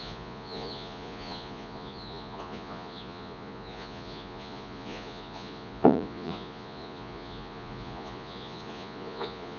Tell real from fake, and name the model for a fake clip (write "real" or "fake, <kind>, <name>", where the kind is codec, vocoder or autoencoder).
fake, vocoder, Vocos